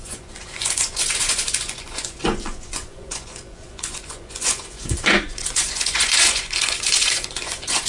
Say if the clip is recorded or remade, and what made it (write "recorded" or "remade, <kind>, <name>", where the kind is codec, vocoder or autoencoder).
remade, vocoder, Vocos